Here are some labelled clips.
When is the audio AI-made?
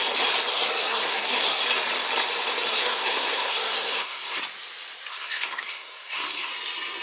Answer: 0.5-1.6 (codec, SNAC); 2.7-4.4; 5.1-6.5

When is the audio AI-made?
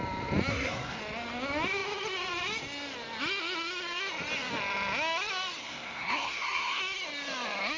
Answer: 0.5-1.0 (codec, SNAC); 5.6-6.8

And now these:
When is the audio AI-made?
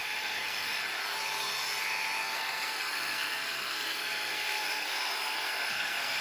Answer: 0.0-0.8 (codec, SNAC); 2.2-6.2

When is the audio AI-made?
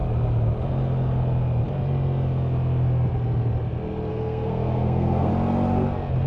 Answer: 4.1-5.3 (codec, SNAC)